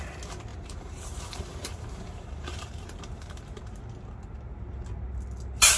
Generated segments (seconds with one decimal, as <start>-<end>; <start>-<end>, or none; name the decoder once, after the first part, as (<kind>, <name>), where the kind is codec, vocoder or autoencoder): 0.5-3.8 (vocoder, BigVGAN v2)